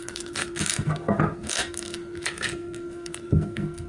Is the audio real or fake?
fake